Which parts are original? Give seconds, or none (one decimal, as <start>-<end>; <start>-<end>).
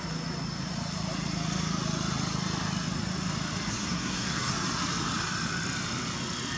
0.0-3.7; 4.5-6.6